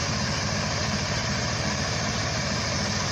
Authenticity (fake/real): fake